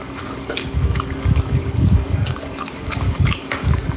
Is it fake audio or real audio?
fake